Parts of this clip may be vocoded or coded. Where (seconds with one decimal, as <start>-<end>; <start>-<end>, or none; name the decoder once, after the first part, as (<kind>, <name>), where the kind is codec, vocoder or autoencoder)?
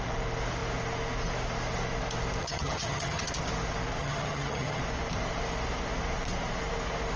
2.4-3.3 (vocoder, HiFi-GAN); 4.0-4.8